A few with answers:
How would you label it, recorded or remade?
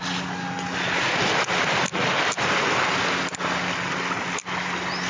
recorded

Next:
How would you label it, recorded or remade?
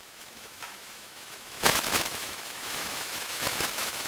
remade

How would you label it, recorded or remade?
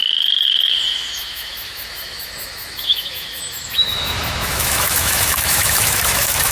remade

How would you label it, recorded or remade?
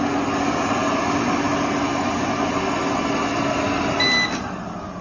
recorded